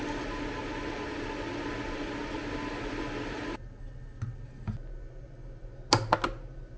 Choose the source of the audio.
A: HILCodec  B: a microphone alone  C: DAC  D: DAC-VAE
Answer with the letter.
B